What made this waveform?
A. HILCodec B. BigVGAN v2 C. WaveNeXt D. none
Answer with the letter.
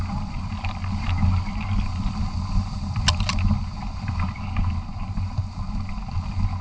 D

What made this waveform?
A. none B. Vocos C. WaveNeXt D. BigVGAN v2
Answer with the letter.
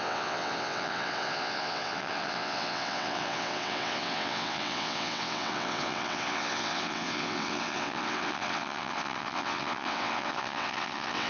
C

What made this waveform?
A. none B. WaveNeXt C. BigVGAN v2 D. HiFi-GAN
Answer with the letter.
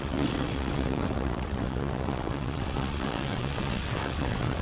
B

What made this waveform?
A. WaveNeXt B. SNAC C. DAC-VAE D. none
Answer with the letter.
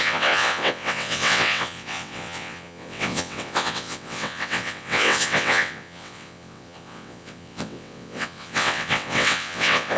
A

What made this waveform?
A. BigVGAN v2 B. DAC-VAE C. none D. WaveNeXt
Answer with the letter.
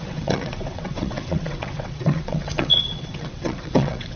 D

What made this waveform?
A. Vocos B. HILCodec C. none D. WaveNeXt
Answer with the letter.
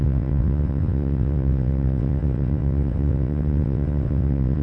D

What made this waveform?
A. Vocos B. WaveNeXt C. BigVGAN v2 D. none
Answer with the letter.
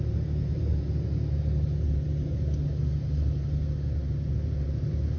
D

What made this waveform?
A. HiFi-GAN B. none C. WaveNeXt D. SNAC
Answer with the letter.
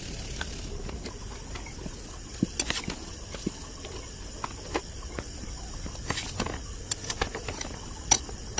B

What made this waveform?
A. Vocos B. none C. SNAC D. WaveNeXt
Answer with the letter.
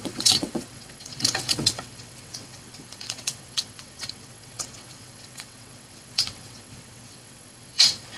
D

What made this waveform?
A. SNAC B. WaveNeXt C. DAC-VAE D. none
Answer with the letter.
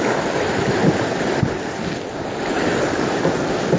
D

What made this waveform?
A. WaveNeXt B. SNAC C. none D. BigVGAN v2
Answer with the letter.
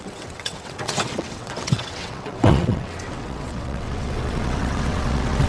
A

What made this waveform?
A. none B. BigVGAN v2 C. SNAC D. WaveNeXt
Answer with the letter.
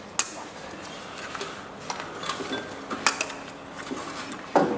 A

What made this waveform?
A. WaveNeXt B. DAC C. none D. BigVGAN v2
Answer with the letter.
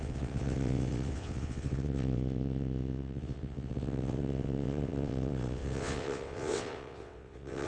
A